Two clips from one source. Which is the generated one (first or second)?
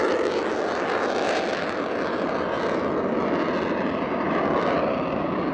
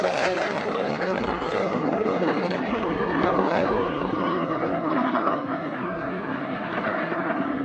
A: second